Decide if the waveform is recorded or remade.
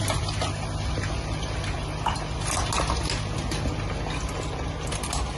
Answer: recorded